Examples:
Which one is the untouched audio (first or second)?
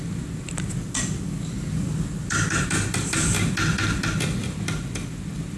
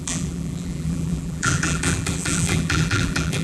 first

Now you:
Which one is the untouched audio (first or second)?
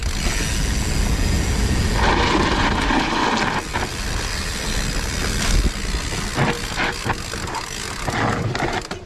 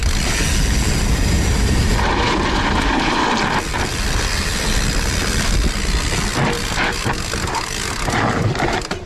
first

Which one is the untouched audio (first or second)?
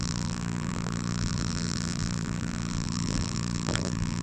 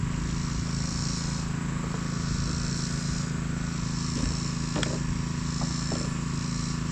second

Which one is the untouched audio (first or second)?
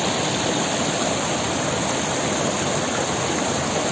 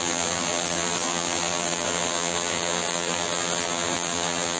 first